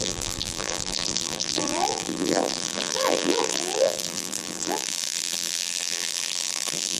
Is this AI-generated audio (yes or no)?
yes